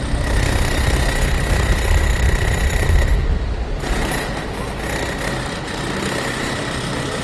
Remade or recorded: recorded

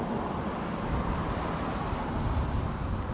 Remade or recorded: recorded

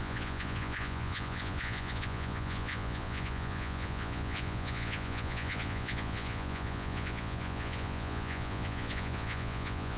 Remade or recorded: remade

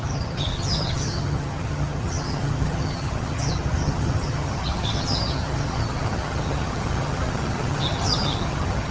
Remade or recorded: remade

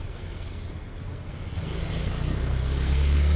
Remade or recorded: remade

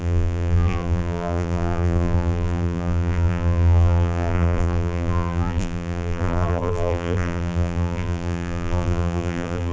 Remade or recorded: remade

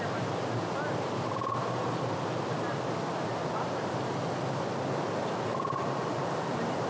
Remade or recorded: recorded